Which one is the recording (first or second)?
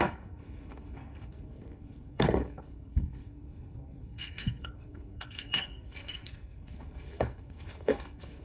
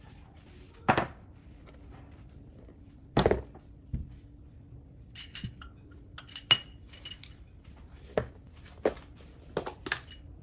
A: second